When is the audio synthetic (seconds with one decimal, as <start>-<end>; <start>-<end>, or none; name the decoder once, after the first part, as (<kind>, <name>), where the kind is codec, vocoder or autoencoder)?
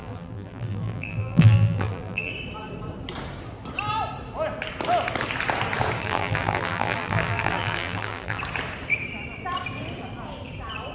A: 0.0-2.3 (vocoder, BigVGAN v2); 6.0-8.4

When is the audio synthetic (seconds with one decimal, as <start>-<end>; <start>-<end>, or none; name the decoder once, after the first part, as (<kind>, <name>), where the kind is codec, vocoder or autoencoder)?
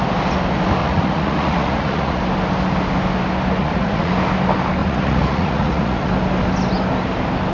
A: 0.8-2.2 (vocoder, Vocos); 3.6-4.1; 4.8-6.1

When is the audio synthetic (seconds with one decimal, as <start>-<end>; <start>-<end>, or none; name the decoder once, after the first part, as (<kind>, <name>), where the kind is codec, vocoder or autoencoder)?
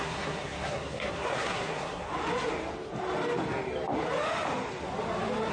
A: 0.0-2.1 (codec, SNAC)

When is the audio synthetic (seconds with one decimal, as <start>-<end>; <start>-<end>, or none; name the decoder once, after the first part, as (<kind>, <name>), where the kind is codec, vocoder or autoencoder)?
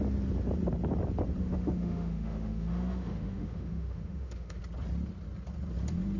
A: 1.4-4.6 (autoencoder, DAC-VAE)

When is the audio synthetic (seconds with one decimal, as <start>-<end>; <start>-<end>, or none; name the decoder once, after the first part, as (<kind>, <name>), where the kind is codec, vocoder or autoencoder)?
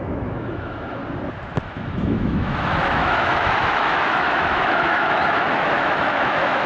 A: 0.0-1.0 (autoencoder, DAC-VAE); 1.6-6.7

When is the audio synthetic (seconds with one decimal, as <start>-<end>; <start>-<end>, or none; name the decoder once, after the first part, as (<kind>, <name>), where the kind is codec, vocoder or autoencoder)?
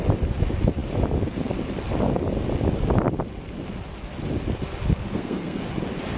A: 5.1-5.6 (codec, SNAC)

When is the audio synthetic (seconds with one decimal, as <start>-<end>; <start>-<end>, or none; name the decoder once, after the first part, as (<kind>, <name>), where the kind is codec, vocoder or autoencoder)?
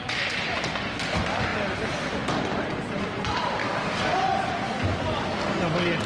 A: none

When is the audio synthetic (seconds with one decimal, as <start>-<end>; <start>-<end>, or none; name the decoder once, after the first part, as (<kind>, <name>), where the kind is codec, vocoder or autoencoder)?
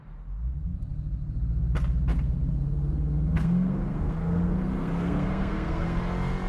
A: 2.1-6.0 (codec, SNAC)